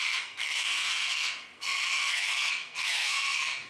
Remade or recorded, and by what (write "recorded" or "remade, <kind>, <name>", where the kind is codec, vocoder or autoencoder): remade, codec, SNAC